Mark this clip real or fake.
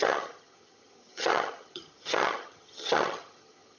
fake